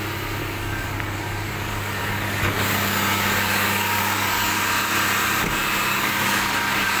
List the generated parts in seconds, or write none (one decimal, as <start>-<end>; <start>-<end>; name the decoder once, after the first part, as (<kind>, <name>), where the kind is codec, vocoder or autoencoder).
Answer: 0.4-4.6 (codec, DAC); 5.9-7.0